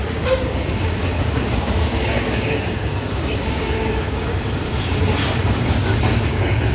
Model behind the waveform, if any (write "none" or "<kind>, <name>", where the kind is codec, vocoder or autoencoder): codec, DAC